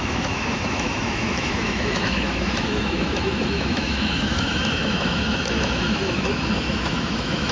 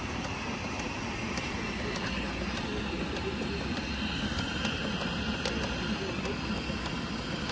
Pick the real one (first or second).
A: second